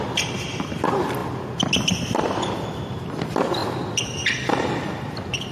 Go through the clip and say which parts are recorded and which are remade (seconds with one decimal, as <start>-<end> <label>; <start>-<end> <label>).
0.0-5.5 recorded

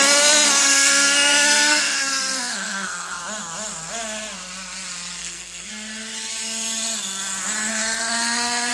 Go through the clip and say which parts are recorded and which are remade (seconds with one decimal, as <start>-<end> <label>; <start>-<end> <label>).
0.0-0.6 recorded; 0.6-3.2 remade; 3.2-5.2 recorded; 5.2-5.7 remade; 5.7-7.7 recorded; 7.7-8.7 remade

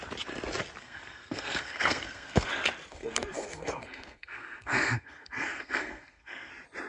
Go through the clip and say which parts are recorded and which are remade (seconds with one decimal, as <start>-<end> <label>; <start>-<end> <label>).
0.0-0.8 recorded; 0.8-2.5 remade; 2.5-2.9 recorded; 2.9-6.5 remade; 6.5-6.9 recorded

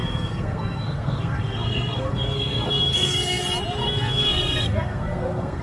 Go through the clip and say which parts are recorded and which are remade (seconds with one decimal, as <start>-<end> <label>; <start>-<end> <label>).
0.0-3.4 remade; 3.4-3.8 recorded; 3.8-5.6 remade

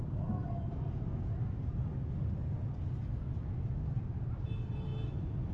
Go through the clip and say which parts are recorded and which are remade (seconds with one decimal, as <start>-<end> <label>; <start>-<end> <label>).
0.0-5.5 recorded

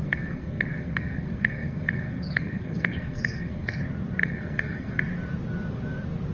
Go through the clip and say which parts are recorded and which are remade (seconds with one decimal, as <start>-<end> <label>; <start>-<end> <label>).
0.0-3.8 remade; 3.8-4.2 recorded; 4.2-5.0 remade; 5.0-6.3 recorded

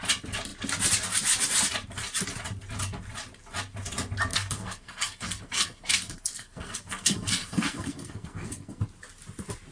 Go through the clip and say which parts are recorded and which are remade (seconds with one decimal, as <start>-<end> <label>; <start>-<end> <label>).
0.0-4.3 recorded; 4.3-8.8 remade; 8.8-9.7 recorded

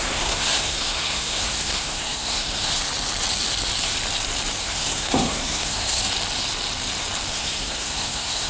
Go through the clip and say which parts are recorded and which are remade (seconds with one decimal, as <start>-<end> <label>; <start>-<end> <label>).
0.0-2.8 remade; 2.8-4.6 recorded; 4.6-6.0 remade; 6.0-7.3 recorded; 7.3-8.5 remade